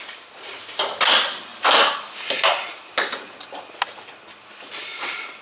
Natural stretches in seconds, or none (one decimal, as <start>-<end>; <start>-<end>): 0.0-5.4